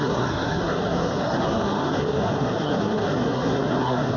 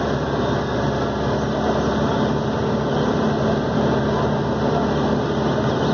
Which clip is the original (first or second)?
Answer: second